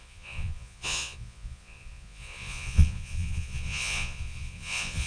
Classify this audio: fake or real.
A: fake